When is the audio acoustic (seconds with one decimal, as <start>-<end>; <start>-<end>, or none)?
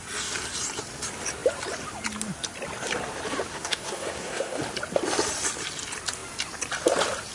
0.0-3.5; 4.6-7.3